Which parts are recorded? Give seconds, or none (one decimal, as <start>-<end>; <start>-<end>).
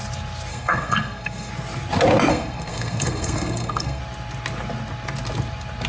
0.0-0.5; 1.5-2.3; 4.0-5.9